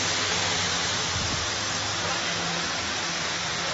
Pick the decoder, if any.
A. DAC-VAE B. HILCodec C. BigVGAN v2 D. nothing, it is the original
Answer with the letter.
D